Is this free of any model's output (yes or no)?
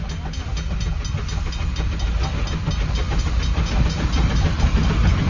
yes